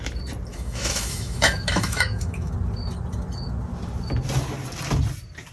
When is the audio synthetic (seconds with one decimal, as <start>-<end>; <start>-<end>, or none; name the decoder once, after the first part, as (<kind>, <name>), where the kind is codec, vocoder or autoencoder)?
0.5-2.5 (autoencoder, DAC-VAE)

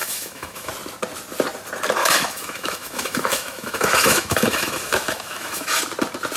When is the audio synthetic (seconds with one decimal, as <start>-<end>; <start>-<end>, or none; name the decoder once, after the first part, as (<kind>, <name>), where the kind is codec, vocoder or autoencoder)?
0.0-0.7 (autoencoder, DAC-VAE); 2.0-5.8

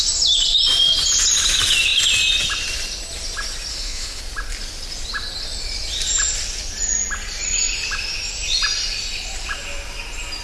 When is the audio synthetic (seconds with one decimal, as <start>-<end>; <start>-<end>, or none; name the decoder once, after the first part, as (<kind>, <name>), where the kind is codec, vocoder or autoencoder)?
3.7-4.2 (autoencoder, DAC-VAE)

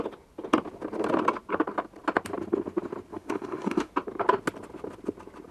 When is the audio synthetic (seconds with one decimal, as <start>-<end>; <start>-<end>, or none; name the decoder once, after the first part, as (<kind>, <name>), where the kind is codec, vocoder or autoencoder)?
3.1-3.9 (autoencoder, DAC-VAE)